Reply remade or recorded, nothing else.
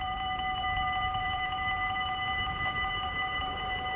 remade